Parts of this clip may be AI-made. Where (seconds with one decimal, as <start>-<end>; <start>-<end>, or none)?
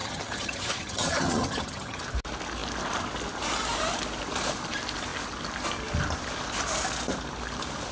0.0-2.0